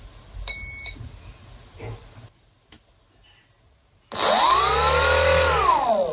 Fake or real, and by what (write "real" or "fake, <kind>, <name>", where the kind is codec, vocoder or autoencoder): real